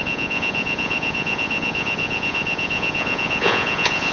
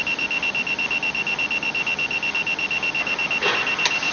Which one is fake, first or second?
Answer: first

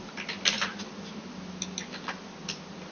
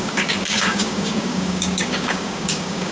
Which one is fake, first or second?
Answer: second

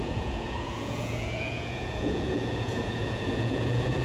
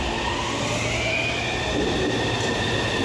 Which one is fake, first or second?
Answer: first